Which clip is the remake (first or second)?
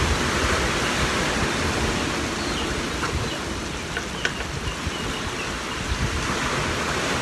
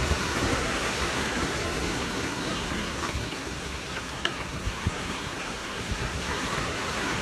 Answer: second